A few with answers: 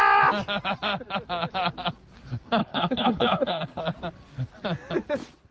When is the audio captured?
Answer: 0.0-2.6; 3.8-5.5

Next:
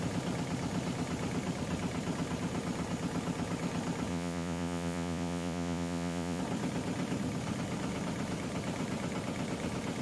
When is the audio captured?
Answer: 0.0-4.1; 6.4-10.0

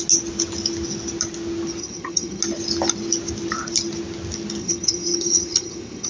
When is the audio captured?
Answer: 0.0-1.8; 2.4-4.6